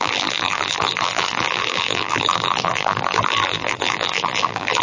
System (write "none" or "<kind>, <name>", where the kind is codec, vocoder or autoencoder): vocoder, BigVGAN v2